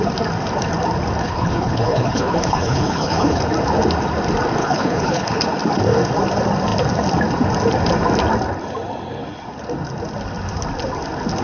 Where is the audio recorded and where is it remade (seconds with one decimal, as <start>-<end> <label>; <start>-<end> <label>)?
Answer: 0.0-1.2 recorded; 1.2-3.4 remade; 3.4-4.6 recorded; 4.6-5.4 remade; 5.4-11.4 recorded